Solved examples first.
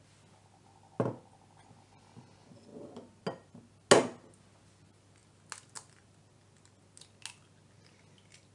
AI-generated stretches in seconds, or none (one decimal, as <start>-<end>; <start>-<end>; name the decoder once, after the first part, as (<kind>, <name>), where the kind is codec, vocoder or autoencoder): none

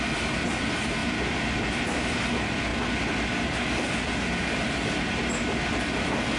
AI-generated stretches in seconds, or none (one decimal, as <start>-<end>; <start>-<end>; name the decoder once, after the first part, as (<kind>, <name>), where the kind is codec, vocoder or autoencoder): 1.0-1.6 (vocoder, BigVGAN v2)

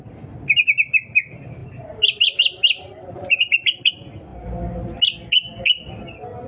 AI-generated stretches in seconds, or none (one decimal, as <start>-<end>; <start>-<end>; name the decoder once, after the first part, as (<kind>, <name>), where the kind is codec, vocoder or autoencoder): 1.6-3.9 (vocoder, BigVGAN v2)